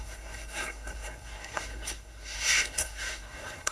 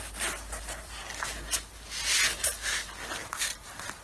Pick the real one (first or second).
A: second